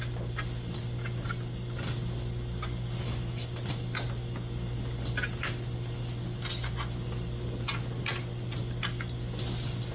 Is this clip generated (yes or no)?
no